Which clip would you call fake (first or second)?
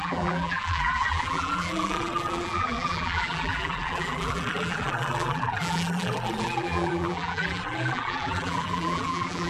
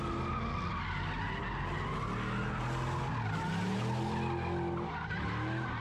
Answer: first